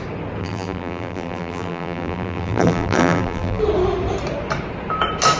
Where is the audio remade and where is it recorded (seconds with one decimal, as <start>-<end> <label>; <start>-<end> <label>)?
0.0-0.4 recorded; 0.4-3.6 remade; 3.6-5.4 recorded

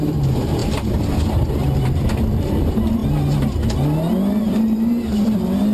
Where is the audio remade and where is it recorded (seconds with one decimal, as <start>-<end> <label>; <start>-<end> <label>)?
0.0-3.0 remade; 3.0-4.4 recorded; 4.4-5.7 remade

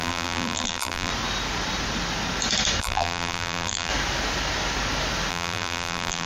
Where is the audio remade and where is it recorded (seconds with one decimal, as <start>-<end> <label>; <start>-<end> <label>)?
0.0-1.1 remade; 1.1-2.8 recorded; 2.8-3.9 remade; 3.9-5.3 recorded; 5.3-6.3 remade

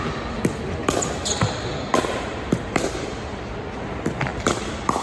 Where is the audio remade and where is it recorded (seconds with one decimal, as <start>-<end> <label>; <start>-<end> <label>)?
0.0-0.8 recorded; 0.8-3.4 remade; 3.4-4.3 recorded; 4.3-5.0 remade

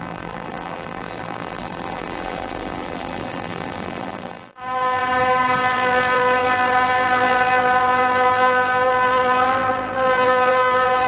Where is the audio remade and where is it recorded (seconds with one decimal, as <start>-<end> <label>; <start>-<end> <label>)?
0.0-5.0 remade; 5.0-5.6 recorded; 5.6-11.1 remade

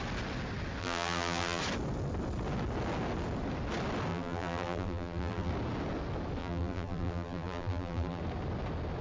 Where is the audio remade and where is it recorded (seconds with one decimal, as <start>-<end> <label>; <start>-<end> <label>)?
0.0-0.8 recorded; 0.8-1.6 remade; 1.6-4.1 recorded; 4.1-5.5 remade; 5.5-6.4 recorded; 6.4-8.2 remade; 8.2-9.0 recorded